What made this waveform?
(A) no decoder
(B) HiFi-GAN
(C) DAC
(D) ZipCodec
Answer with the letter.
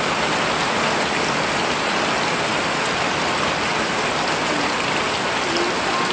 A